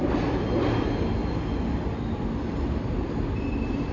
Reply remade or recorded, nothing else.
recorded